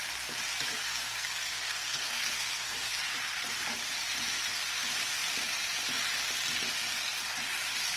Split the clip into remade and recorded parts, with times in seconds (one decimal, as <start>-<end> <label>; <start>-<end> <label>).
0.0-0.9 recorded; 0.9-3.0 remade; 3.0-8.0 recorded